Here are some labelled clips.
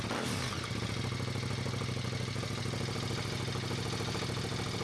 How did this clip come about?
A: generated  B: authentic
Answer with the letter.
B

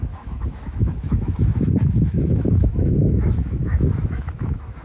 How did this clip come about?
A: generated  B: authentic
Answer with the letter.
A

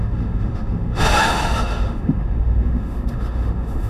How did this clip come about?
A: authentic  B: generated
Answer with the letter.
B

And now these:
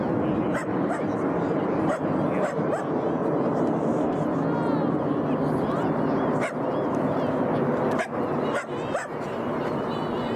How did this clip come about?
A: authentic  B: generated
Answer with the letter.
A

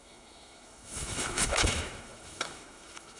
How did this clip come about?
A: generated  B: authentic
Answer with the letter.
A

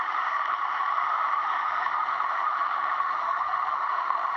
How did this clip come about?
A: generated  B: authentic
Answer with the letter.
A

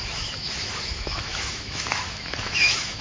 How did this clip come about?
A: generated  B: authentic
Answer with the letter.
A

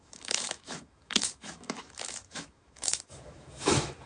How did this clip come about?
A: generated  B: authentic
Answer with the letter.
A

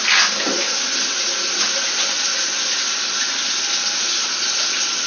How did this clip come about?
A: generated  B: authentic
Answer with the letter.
B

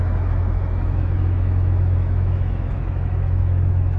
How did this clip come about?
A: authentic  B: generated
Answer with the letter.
B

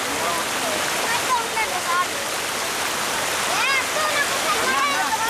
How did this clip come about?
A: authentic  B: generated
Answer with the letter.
A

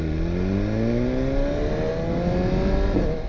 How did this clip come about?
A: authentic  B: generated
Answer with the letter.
A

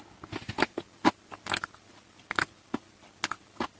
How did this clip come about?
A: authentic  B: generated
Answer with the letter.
A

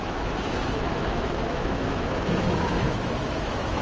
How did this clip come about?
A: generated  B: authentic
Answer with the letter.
A